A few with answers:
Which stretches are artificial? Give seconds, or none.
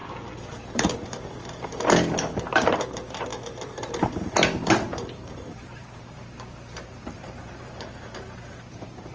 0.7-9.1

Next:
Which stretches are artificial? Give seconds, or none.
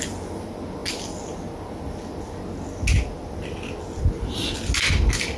none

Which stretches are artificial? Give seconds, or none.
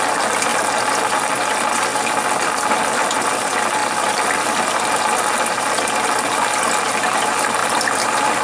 1.9-3.4; 3.8-4.6; 7.6-8.4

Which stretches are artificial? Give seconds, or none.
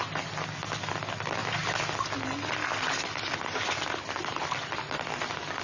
none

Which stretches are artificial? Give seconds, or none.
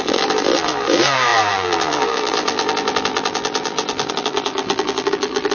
0.0-5.5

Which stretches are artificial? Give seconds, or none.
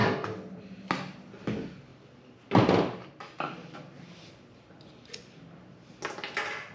none